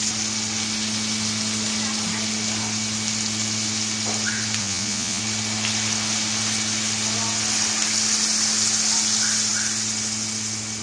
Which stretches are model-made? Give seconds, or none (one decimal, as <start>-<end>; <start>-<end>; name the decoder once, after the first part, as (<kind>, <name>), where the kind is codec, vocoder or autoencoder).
4.6-5.2 (vocoder, Vocos)